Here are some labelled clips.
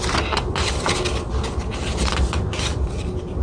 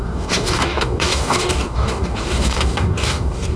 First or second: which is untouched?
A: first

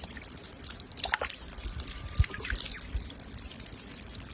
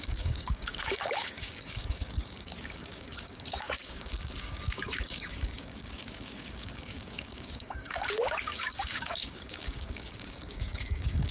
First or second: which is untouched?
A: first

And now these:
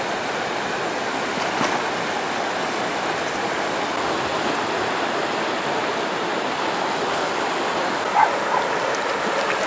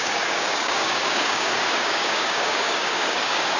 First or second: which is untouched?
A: first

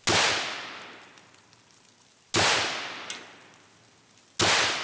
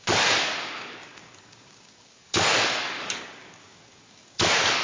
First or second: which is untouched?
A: first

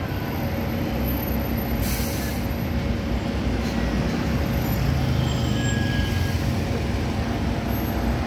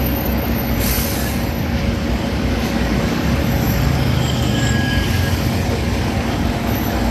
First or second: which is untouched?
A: first